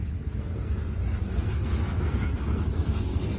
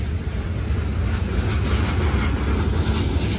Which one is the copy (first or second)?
first